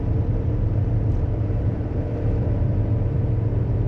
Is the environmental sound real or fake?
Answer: fake